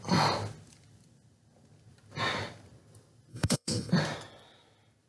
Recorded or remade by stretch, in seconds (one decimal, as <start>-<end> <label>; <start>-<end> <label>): 0.0-3.3 recorded; 3.3-3.9 remade; 3.9-5.1 recorded